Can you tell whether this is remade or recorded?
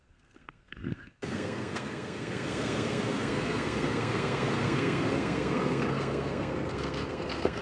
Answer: remade